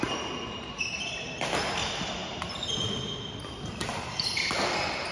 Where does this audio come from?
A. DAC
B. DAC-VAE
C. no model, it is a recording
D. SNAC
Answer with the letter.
C